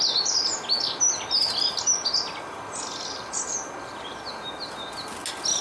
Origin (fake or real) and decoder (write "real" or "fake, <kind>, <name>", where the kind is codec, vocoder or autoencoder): real